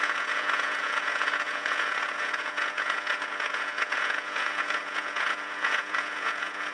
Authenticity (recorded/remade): remade